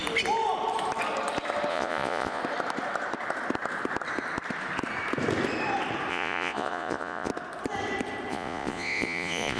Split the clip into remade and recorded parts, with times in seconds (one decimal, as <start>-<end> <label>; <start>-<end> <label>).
0.0-1.7 recorded; 1.7-2.4 remade; 2.4-6.1 recorded; 6.1-7.3 remade; 7.3-8.3 recorded; 8.3-9.6 remade